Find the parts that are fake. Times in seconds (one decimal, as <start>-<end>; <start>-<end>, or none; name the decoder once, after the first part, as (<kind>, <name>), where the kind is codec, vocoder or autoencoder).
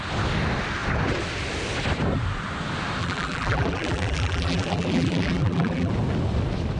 3.0-5.9 (vocoder, BigVGAN v2)